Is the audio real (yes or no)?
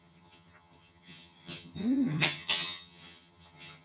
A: no